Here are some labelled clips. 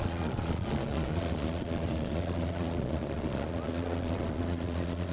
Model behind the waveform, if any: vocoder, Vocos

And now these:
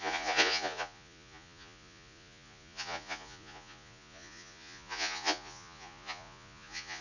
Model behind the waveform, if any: vocoder, Vocos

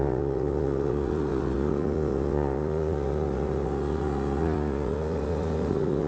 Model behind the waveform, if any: vocoder, Vocos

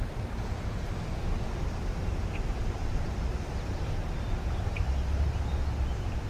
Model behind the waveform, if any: none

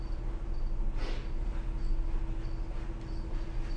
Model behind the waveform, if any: none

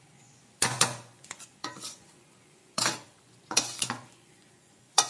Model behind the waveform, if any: vocoder, Vocos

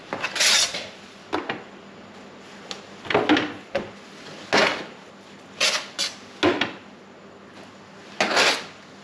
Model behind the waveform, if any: none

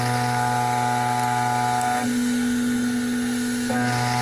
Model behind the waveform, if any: none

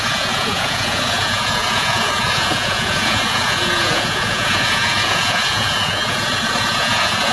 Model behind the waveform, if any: vocoder, Vocos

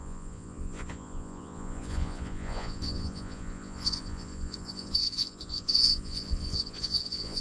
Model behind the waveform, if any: vocoder, Vocos